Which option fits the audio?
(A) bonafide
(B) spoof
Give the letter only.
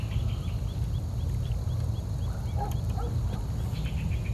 A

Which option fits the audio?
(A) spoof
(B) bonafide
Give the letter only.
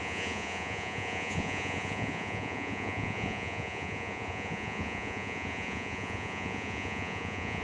A